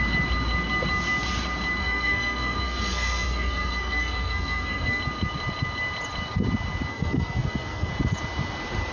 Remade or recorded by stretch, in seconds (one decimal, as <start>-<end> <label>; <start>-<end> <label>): 0.0-1.8 recorded; 1.8-5.0 remade; 5.0-6.9 recorded; 6.9-7.9 remade; 7.9-8.9 recorded